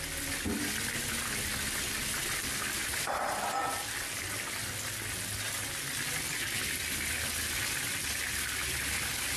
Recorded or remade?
recorded